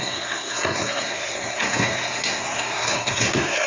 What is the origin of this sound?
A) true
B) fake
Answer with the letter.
B